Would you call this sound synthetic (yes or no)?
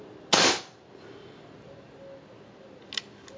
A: no